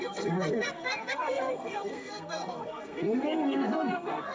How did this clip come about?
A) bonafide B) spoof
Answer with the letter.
B